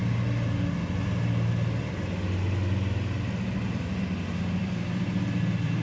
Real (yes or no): yes